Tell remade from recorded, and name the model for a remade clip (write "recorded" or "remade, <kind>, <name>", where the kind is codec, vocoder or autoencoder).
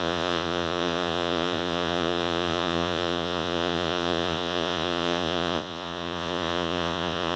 remade, vocoder, Vocos